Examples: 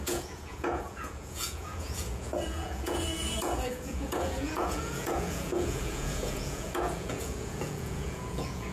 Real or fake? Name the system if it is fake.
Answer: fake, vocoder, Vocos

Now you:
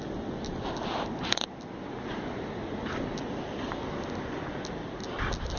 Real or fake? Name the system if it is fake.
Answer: real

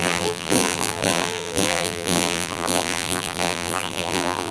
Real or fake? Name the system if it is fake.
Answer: fake, vocoder, BigVGAN v2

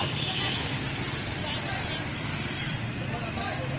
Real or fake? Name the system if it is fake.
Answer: real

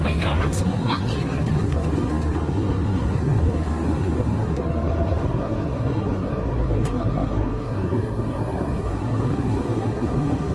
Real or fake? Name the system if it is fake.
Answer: fake, codec, SNAC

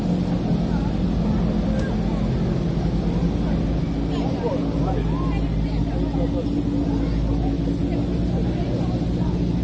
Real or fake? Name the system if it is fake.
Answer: real